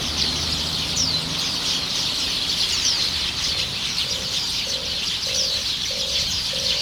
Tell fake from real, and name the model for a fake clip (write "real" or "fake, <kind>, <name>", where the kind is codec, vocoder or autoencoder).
fake, vocoder, BigVGAN v2